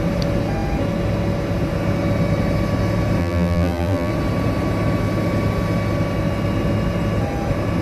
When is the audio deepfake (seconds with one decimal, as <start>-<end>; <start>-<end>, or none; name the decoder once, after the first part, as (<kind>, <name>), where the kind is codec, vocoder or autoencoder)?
3.2-4.1 (vocoder, BigVGAN v2)